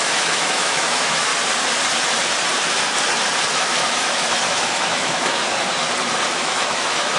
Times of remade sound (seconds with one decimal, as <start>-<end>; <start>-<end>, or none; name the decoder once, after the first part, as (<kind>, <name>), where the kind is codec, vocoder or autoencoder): 0.0-1.3 (autoencoder, DAC-VAE); 3.5-5.4; 6.3-7.2